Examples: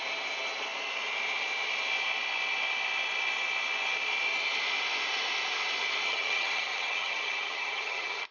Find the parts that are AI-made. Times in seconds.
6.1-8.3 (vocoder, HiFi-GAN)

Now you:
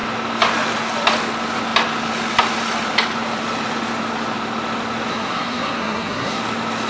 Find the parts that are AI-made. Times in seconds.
5.1-6.4 (codec, SNAC)